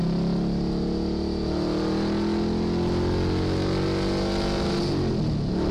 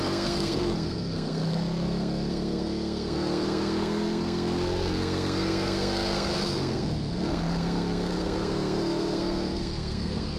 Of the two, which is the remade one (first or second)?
second